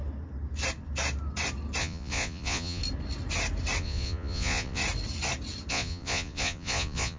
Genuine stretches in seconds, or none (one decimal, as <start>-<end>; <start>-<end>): 0.0-1.8; 2.8-3.8; 4.8-5.7